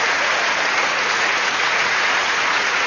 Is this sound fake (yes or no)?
yes